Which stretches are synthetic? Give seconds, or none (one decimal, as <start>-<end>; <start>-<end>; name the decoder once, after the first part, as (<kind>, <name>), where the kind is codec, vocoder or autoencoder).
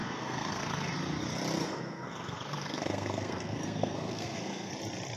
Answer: 0.0-0.9 (codec, SNAC); 1.6-4.7